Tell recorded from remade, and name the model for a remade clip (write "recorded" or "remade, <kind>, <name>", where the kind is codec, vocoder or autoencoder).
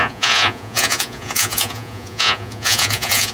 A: remade, vocoder, Vocos